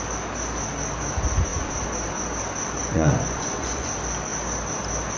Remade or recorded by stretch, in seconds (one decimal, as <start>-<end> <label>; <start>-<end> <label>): 0.0-2.8 recorded; 2.8-3.9 remade; 3.9-5.2 recorded